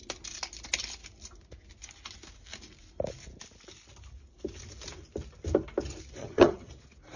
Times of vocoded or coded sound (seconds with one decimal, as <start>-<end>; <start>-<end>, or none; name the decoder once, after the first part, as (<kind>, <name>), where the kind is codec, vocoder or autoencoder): 6.2-6.7 (vocoder, HiFi-GAN)